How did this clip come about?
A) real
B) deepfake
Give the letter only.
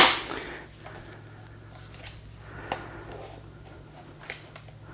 A